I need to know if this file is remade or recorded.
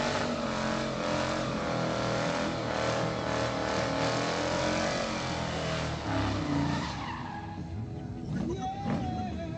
recorded